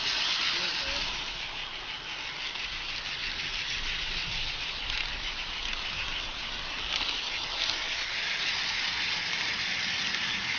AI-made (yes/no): no